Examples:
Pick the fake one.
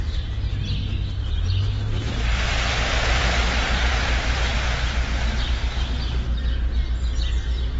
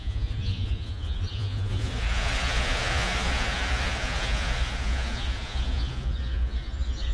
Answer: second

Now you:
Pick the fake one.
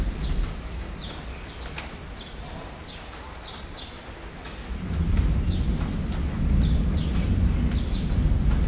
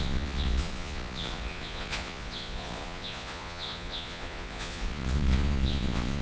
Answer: second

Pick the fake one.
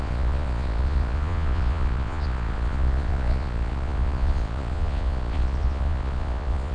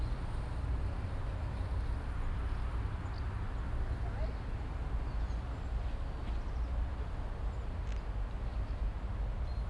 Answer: first